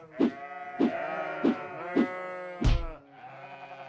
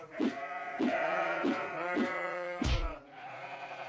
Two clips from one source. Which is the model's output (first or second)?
second